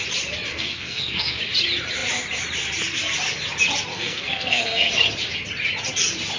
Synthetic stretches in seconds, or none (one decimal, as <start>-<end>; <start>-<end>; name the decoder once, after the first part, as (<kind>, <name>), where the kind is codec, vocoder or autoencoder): 0.5-1.4 (codec, SNAC); 3.9-4.9

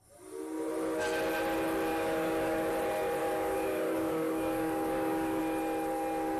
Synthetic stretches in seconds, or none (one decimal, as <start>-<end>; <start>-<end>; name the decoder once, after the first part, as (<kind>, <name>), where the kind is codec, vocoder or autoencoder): 1.9-2.7 (codec, DAC); 3.2-5.4

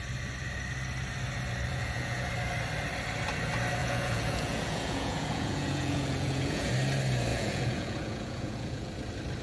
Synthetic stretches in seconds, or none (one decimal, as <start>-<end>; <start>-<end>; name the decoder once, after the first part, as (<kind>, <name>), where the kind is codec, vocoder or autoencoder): 1.7-2.3 (vocoder, Vocos); 3.8-6.7; 7.3-8.9

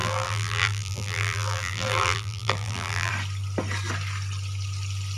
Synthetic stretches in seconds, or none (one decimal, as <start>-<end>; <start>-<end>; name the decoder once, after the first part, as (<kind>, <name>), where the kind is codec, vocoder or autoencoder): 0.0-3.1 (vocoder, BigVGAN v2)

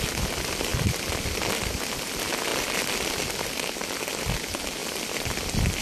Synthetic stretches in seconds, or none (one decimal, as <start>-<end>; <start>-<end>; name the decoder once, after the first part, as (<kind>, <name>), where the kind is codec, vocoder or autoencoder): 0.7-1.4 (vocoder, BigVGAN v2); 4.8-5.8

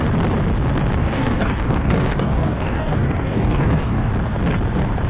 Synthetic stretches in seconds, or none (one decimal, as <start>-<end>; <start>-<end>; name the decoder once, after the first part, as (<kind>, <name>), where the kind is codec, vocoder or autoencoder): 1.0-4.1 (codec, DAC)

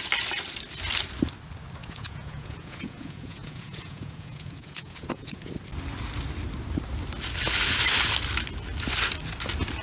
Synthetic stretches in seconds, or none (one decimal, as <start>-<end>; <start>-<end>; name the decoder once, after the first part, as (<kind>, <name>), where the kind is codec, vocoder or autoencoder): 1.8-5.5 (vocoder, Vocos)